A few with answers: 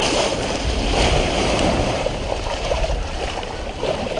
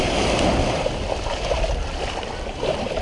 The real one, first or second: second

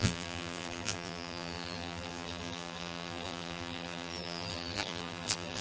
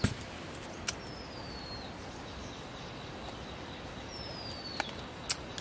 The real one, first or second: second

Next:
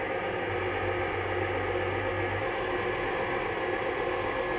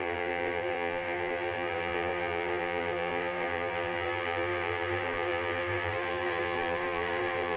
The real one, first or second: first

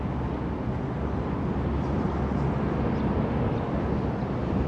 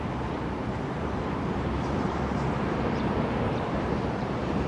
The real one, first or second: first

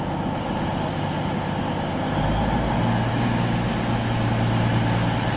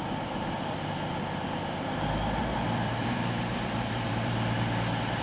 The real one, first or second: first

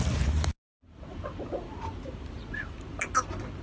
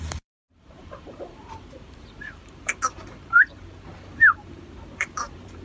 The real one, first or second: first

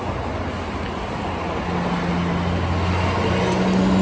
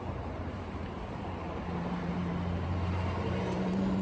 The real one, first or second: first